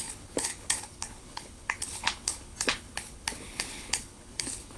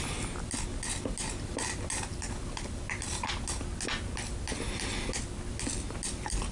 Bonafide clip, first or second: second